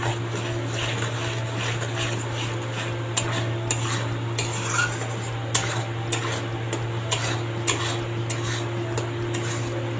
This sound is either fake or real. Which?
real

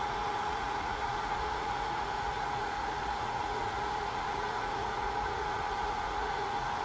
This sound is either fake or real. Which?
fake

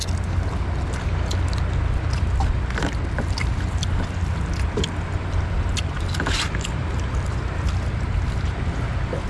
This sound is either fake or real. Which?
real